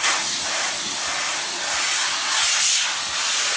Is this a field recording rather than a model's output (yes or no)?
yes